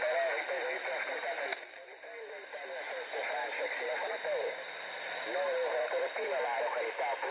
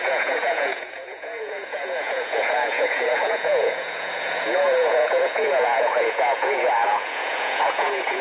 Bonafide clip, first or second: first